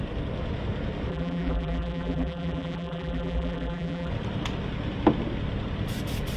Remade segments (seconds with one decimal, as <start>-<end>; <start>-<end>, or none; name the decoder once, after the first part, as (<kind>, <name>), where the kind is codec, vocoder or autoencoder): 1.1-4.1 (vocoder, BigVGAN v2)